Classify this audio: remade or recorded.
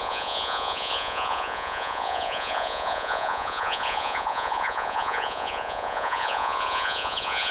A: remade